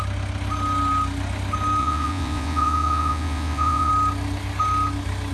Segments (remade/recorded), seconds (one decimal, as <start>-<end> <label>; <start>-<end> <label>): 0.0-1.8 recorded; 1.8-3.9 remade; 3.9-5.3 recorded